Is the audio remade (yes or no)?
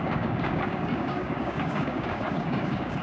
yes